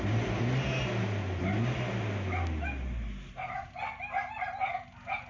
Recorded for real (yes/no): yes